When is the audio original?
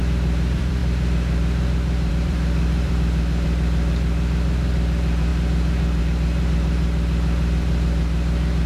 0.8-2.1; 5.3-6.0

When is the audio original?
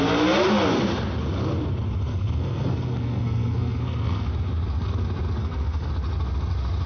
0.0-2.1; 4.3-5.4; 5.9-6.9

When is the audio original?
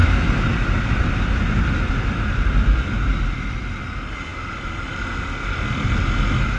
0.0-6.6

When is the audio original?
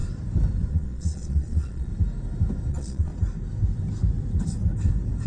0.0-0.7; 1.9-2.7; 3.1-5.3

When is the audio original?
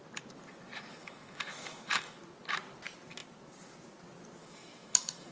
0.0-0.9; 2.2-4.4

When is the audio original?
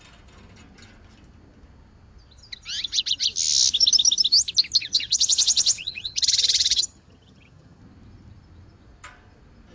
0.0-4.8; 7.8-9.7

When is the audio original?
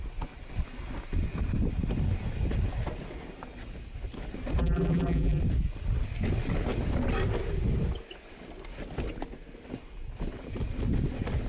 0.0-4.6; 5.4-11.5